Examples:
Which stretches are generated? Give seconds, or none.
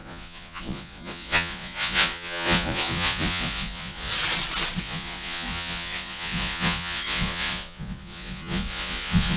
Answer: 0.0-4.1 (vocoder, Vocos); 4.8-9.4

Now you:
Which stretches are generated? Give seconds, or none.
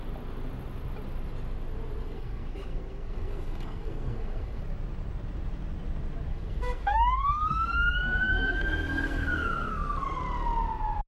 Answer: 2.0-4.6 (codec, SNAC); 6.3-10.2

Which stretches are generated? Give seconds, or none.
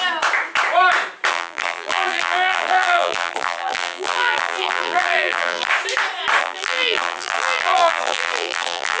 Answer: 1.3-5.7 (vocoder, BigVGAN v2); 6.4-9.0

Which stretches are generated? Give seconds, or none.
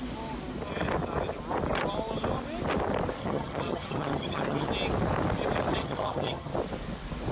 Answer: 3.2-4.7 (vocoder, HiFi-GAN); 5.8-6.5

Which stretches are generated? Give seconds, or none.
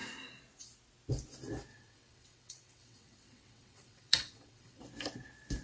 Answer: 1.7-4.8 (vocoder, WaveNeXt)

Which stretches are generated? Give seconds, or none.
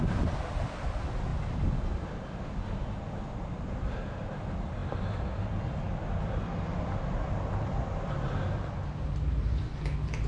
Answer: none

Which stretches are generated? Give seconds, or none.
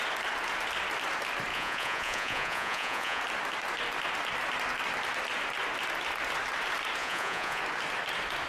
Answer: 1.5-3.2 (vocoder, Vocos); 7.0-7.6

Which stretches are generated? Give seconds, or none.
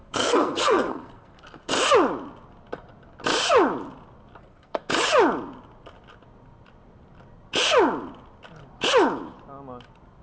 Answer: 0.0-1.7 (codec, SNAC); 4.4-4.9